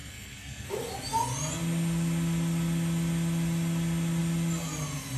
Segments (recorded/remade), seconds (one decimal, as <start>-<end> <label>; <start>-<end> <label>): 0.0-0.7 remade; 0.7-5.2 recorded